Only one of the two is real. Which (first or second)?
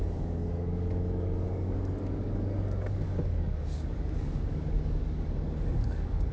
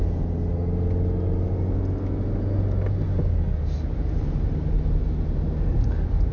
second